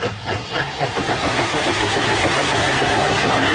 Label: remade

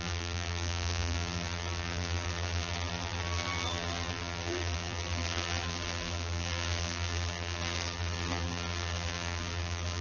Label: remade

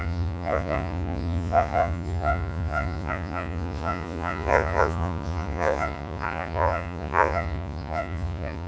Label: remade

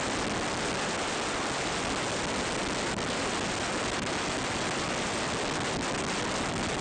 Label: recorded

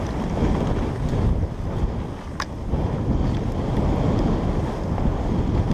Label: recorded